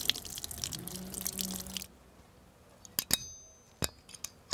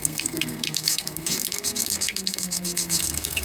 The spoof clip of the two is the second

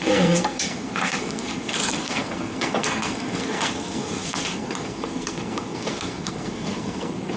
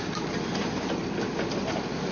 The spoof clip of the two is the first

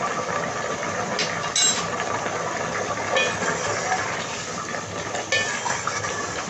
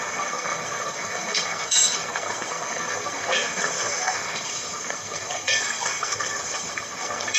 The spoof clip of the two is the second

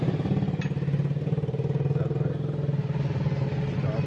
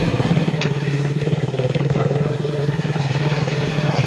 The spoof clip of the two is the second